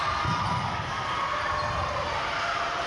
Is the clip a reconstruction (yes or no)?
no